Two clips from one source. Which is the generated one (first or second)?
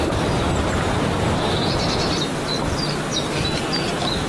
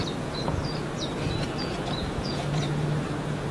second